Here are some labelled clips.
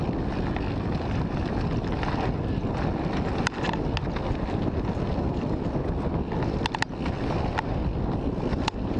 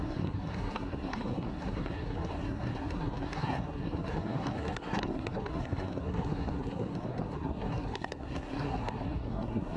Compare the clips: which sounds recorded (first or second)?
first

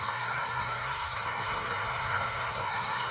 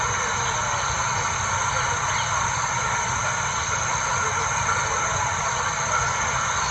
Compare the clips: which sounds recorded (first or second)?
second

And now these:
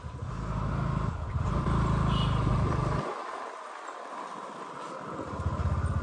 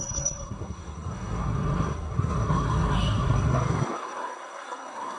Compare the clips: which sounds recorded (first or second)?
first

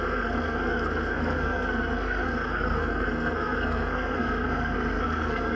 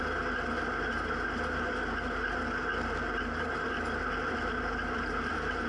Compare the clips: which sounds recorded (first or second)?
second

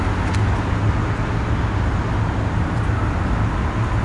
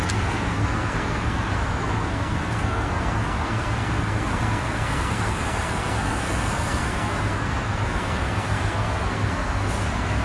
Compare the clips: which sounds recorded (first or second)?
first